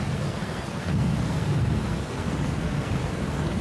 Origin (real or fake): fake